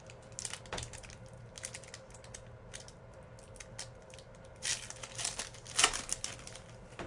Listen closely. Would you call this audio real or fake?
real